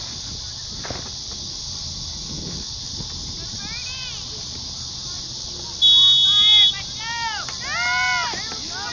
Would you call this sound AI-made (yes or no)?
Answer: no